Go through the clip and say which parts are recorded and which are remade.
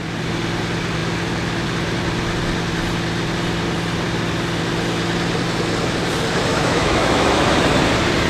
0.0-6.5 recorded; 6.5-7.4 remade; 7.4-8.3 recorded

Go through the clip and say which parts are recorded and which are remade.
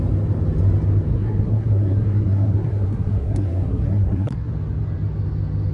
0.0-1.1 recorded; 1.1-4.5 remade; 4.5-5.7 recorded